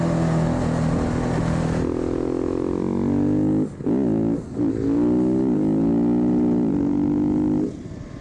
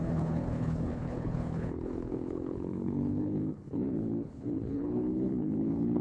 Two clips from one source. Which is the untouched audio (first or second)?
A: first